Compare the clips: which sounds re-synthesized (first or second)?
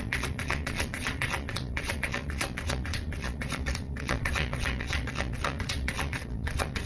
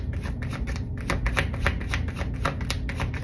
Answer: first